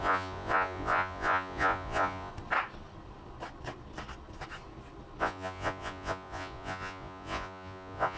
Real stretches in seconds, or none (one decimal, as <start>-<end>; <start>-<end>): 2.3-5.2